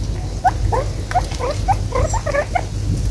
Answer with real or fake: real